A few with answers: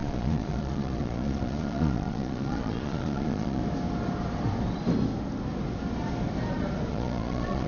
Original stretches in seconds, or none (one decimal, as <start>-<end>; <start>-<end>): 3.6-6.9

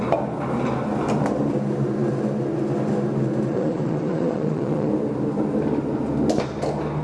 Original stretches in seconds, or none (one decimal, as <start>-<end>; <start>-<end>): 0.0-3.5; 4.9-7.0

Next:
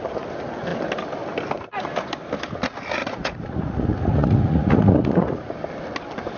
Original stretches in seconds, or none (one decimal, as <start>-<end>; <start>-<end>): 0.0-3.0; 5.5-6.4

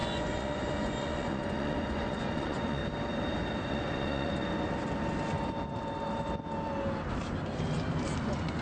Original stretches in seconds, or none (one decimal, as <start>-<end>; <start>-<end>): 2.8-3.7; 4.4-8.2

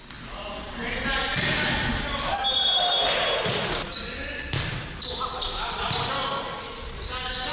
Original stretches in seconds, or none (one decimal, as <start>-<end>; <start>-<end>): 0.0-7.5

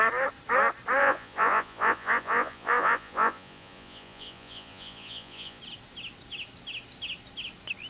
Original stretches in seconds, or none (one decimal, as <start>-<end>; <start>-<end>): 0.0-1.0; 5.6-7.9